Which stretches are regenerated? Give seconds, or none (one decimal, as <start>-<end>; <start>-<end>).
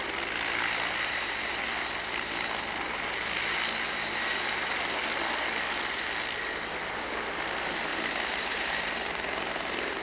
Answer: 7.9-10.0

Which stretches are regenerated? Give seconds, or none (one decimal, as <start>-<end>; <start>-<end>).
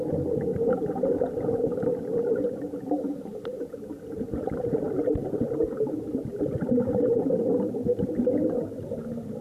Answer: 0.5-1.3; 2.1-5.8; 6.3-7.2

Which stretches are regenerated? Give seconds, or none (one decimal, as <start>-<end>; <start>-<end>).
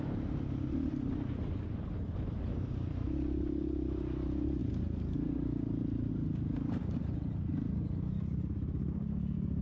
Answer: none